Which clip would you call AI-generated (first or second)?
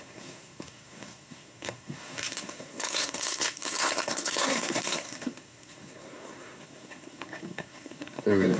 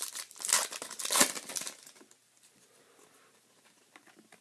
first